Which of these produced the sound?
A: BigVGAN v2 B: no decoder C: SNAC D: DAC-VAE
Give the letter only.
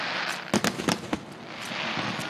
B